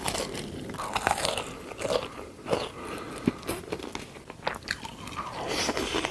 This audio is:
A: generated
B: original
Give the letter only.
B